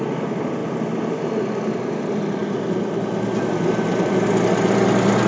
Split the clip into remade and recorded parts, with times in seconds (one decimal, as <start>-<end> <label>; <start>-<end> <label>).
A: 0.0-5.3 recorded